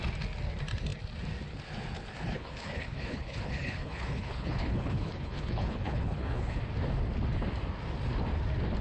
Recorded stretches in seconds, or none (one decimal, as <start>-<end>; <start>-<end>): 0.0-2.1; 6.6-8.8